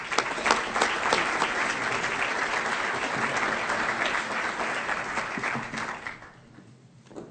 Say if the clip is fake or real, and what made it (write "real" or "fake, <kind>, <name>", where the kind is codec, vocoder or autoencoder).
real